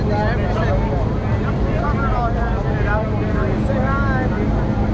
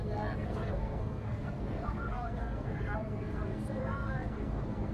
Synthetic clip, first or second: second